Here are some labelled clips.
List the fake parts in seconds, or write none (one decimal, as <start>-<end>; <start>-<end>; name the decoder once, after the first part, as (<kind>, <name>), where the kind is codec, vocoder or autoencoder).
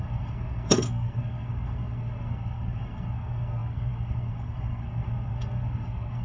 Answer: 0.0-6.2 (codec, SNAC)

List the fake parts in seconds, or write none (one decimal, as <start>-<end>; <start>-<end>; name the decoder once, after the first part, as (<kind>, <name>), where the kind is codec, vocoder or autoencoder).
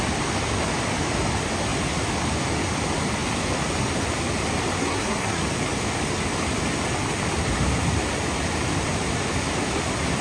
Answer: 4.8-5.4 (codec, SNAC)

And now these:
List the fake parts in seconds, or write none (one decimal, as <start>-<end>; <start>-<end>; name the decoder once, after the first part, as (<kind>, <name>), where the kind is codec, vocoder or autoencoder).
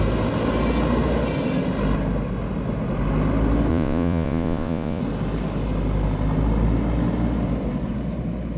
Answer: 3.7-5.0 (vocoder, Vocos)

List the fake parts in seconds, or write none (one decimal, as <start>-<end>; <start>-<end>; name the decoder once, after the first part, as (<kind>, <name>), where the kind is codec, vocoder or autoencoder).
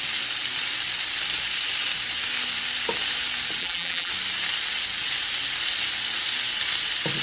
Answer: 3.6-4.1 (vocoder, BigVGAN v2)